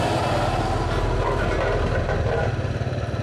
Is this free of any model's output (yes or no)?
yes